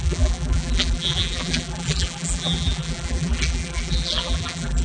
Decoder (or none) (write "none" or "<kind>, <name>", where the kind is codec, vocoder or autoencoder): vocoder, BigVGAN v2